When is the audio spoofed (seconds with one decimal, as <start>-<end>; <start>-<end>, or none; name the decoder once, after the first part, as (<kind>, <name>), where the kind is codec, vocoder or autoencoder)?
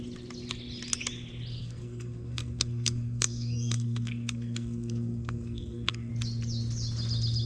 1.6-6.1 (codec, SNAC)